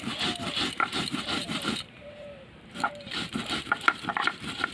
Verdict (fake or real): fake